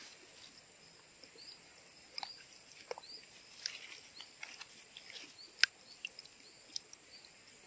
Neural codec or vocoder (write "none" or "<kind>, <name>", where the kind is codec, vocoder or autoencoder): none